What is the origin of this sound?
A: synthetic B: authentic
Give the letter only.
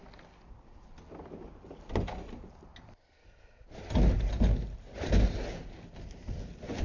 B